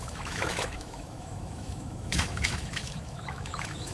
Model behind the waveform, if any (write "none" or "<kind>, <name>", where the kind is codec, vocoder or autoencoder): autoencoder, DAC-VAE